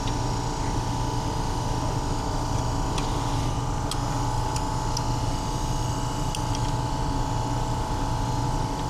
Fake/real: real